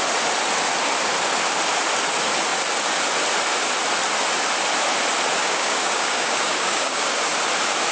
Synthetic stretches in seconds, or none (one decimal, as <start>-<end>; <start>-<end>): 5.4-7.2